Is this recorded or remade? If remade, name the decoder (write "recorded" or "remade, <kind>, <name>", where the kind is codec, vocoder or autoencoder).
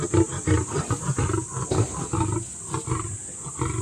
recorded